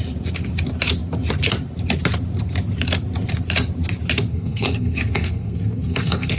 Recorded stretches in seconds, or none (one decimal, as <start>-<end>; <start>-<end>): 0.0-4.3